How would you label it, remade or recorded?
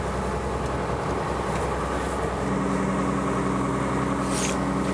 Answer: recorded